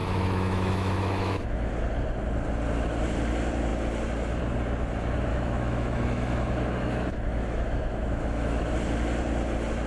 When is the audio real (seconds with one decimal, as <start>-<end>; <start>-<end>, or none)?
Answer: 1.7-5.3; 8.7-9.9